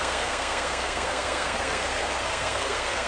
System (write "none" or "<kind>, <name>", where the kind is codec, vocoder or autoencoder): codec, SNAC